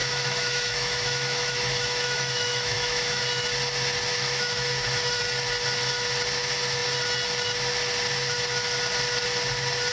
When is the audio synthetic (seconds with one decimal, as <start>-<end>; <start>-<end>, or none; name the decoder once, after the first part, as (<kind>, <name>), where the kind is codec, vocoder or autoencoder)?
0.0-3.2 (autoencoder, DAC-VAE); 4.1-5.2